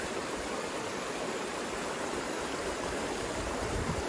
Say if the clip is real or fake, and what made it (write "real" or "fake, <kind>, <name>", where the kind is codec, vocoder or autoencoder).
fake, vocoder, BigVGAN v2